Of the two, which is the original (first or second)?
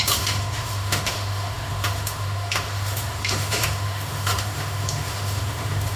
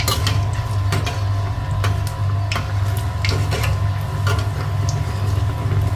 second